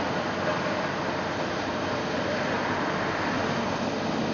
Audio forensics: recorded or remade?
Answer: recorded